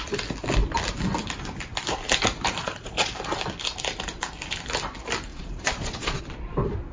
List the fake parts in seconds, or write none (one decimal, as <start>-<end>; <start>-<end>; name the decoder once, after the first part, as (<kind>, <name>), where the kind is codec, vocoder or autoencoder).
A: 2.6-3.1 (vocoder, Vocos); 5.3-6.2